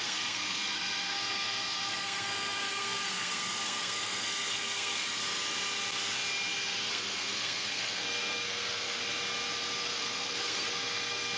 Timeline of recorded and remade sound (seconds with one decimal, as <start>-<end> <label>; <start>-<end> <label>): 0.0-5.2 remade; 5.2-6.9 recorded; 6.9-9.0 remade; 9.0-9.8 recorded; 9.8-11.4 remade